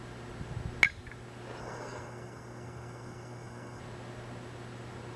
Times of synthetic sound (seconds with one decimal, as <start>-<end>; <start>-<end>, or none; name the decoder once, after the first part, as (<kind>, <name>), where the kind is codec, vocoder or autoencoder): 1.6-3.8 (codec, SNAC)